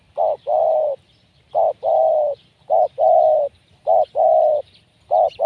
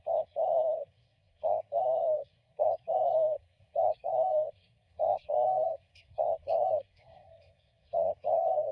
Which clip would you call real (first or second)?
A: first